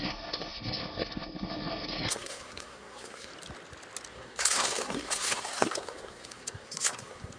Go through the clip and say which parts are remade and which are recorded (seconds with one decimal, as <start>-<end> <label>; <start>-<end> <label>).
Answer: 0.0-3.3 remade; 3.3-4.1 recorded; 4.1-7.4 remade